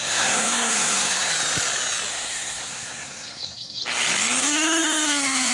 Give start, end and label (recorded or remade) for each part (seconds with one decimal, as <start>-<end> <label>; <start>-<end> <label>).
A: 0.0-1.3 remade; 1.3-2.1 recorded; 2.1-3.8 remade; 3.8-4.4 recorded; 4.4-5.5 remade